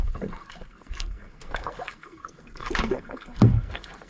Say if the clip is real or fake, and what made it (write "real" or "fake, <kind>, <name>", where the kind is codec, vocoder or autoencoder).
fake, codec, SNAC